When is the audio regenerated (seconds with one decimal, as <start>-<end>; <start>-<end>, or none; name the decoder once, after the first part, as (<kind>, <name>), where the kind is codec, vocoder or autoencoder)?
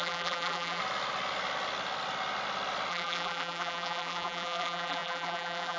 0.0-0.8 (vocoder, BigVGAN v2); 2.9-5.8